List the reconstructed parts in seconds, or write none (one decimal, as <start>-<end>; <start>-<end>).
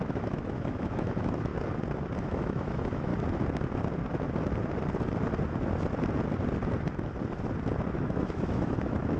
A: 0.0-1.5; 2.2-3.1; 7.9-9.2